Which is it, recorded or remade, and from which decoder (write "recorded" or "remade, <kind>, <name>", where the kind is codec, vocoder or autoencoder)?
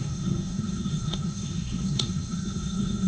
remade, codec, SNAC